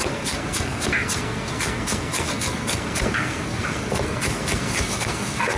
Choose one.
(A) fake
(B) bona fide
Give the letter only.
A